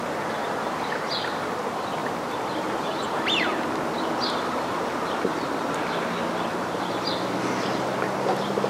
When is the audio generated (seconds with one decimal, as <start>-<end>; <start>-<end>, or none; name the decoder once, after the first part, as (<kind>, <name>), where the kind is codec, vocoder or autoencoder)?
2.0-3.5 (vocoder, BigVGAN v2); 6.5-7.1